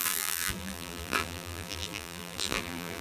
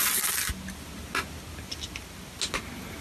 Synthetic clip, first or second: first